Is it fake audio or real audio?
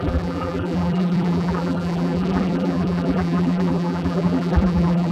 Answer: fake